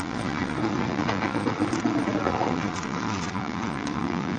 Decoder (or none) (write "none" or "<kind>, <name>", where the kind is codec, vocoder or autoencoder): vocoder, Vocos